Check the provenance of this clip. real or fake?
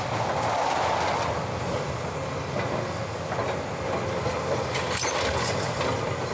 real